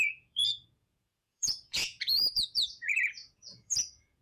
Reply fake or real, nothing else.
fake